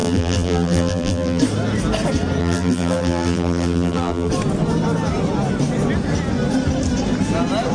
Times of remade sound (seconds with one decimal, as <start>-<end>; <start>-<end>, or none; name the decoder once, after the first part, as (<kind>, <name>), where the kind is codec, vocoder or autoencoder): 0.0-1.4 (vocoder, BigVGAN v2); 2.4-4.3